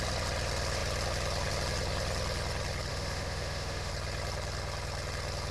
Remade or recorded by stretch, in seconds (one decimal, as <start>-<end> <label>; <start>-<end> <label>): 0.0-2.9 recorded; 2.9-3.9 remade; 3.9-5.5 recorded

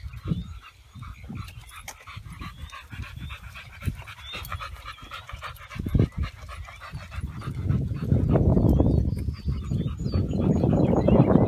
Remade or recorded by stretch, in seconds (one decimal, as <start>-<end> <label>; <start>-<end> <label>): 0.0-11.5 recorded

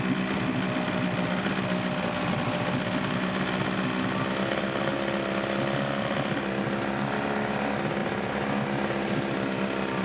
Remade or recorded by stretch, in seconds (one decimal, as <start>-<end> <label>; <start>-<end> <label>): 0.0-10.0 recorded

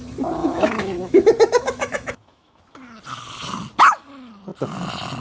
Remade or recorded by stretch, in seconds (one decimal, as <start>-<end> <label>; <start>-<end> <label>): 0.0-0.4 recorded; 0.4-2.6 remade; 2.6-5.2 recorded

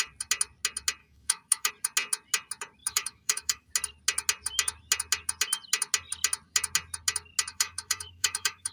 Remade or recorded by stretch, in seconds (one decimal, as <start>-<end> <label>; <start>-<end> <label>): 0.0-1.0 recorded; 1.0-1.7 remade; 1.7-2.8 recorded; 2.8-3.7 remade; 3.7-7.5 recorded; 7.5-8.7 remade

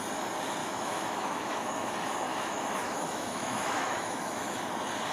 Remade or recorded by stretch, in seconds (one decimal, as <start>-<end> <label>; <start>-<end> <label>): 0.0-0.6 recorded; 0.6-1.9 remade; 1.9-2.3 recorded; 2.3-4.6 remade; 4.6-5.1 recorded

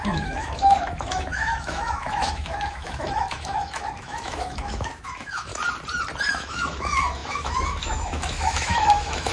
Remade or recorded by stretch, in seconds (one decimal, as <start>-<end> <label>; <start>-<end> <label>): 0.0-5.5 remade; 5.5-6.3 recorded; 6.3-9.3 remade